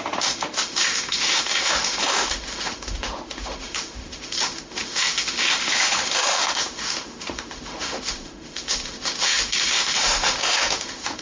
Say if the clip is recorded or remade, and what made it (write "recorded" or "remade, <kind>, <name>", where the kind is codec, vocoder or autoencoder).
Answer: remade, autoencoder, DAC-VAE